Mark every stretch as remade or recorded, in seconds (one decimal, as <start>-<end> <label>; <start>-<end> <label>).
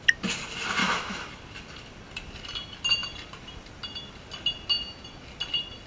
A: 0.0-0.8 recorded; 0.8-1.3 remade; 1.3-5.9 recorded